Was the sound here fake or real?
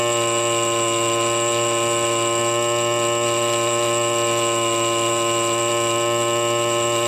real